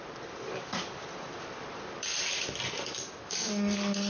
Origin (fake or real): fake